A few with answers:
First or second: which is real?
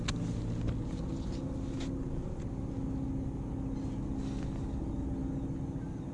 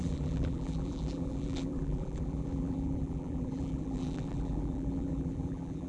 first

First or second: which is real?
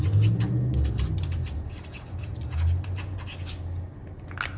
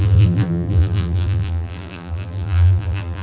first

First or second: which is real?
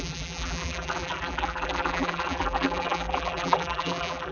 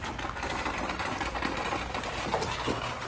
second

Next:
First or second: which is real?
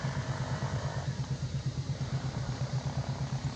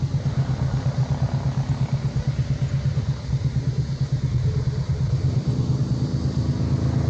second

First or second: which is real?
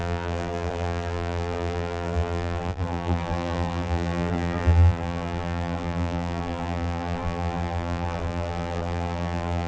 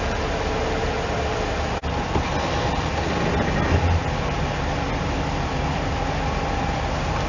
second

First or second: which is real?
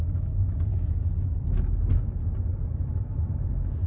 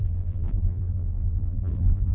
first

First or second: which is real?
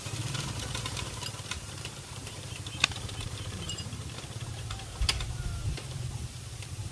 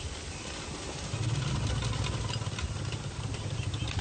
second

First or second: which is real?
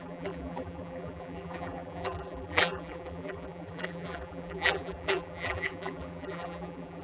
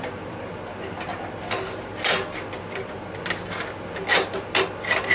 second